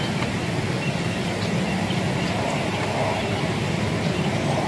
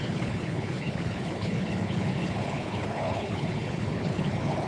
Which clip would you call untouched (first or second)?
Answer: first